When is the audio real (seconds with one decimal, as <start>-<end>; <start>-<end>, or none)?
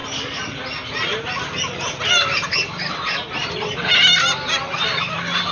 0.0-5.5